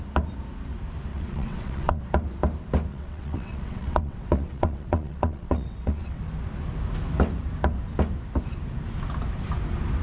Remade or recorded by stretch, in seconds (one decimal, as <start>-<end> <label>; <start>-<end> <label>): 0.0-1.1 recorded; 1.1-2.0 remade; 2.0-2.9 recorded; 2.9-6.2 remade; 6.2-10.0 recorded